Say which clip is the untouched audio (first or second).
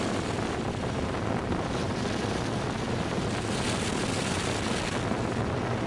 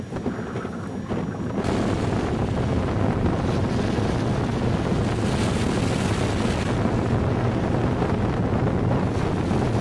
second